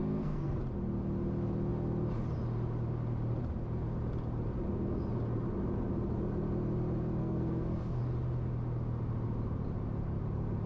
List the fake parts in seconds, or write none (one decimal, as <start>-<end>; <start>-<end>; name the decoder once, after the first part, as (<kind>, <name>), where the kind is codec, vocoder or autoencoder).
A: 0.0-0.6 (codec, SNAC); 7.2-8.0